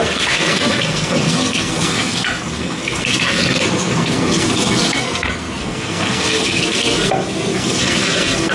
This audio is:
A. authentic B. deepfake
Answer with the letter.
B